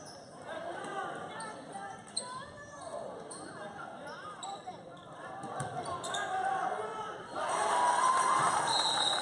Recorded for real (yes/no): no